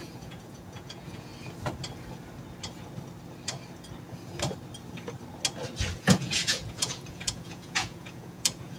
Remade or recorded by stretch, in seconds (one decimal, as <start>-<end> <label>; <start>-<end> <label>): 0.0-1.3 remade; 1.3-5.9 recorded; 5.9-8.8 remade